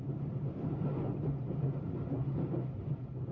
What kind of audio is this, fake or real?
real